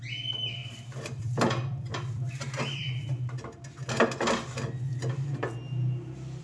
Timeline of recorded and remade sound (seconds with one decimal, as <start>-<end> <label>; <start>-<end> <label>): 0.0-0.6 recorded; 0.6-3.2 remade; 3.2-6.4 recorded